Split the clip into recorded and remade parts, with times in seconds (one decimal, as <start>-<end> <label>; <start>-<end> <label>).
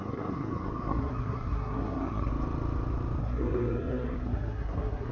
0.0-2.3 remade; 2.3-3.2 recorded; 3.2-5.1 remade